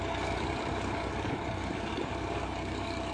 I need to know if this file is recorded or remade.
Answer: remade